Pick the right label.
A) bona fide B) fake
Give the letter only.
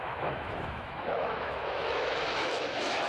B